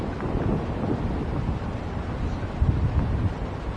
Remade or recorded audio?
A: recorded